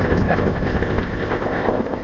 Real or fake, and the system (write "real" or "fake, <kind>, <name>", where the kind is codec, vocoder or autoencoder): fake, codec, ZipCodec